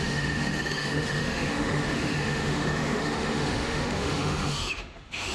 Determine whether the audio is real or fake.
fake